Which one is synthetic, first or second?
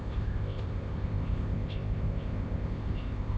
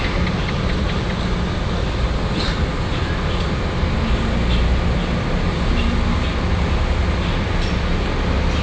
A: first